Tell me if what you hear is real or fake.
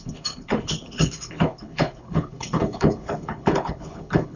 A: fake